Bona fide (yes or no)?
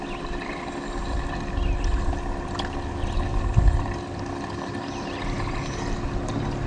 yes